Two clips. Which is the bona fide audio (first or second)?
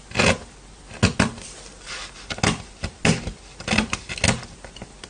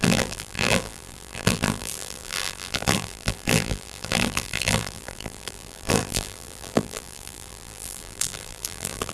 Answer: first